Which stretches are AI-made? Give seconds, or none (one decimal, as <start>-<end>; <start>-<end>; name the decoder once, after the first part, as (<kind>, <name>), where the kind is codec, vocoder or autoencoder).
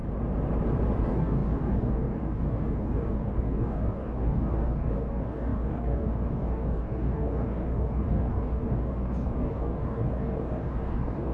1.0-11.3 (codec, DAC)